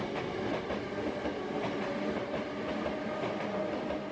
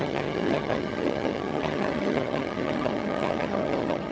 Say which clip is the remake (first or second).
second